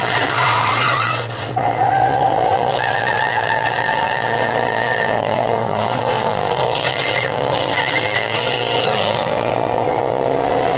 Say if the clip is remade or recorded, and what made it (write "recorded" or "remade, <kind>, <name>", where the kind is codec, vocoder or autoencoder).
remade, vocoder, WaveNeXt